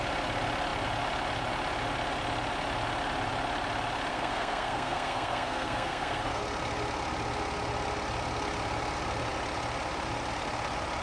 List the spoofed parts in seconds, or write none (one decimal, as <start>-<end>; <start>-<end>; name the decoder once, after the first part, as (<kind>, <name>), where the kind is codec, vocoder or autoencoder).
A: 4.1-6.4 (codec, SNAC)